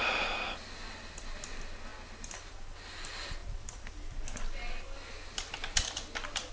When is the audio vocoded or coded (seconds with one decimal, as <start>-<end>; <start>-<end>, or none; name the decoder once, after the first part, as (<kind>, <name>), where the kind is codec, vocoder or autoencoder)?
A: none